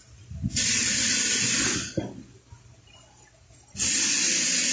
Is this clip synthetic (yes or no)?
no